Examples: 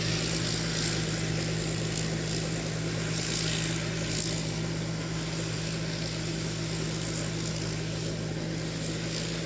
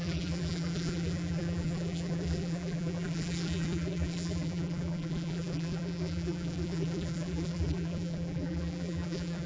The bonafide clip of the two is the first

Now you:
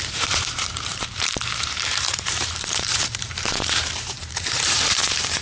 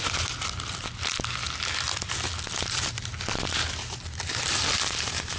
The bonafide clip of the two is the second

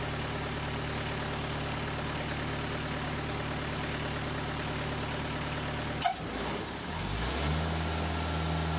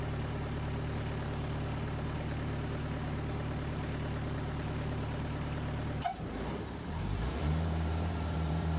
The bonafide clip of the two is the first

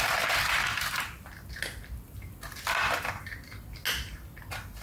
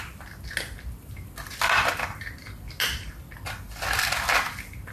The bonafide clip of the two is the first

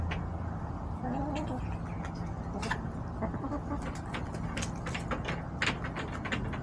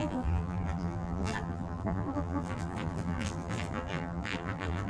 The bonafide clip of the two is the first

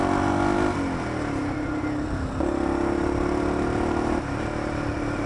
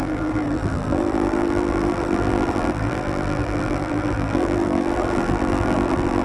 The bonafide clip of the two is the first